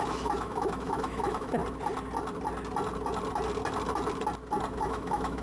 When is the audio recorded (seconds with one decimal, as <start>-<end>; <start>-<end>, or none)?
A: 1.6-4.8